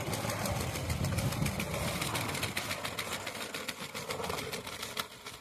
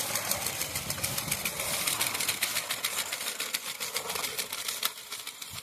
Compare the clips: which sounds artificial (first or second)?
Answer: second